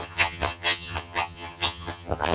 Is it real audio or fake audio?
fake